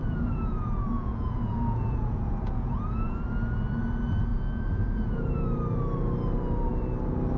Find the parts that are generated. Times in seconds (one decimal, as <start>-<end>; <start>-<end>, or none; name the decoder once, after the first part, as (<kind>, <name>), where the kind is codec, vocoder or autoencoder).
0.0-3.2 (vocoder, Vocos); 4.3-5.2